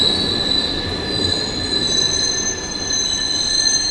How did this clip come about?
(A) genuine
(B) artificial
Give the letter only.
A